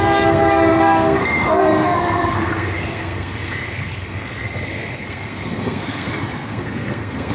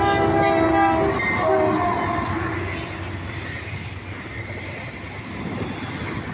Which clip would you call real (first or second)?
second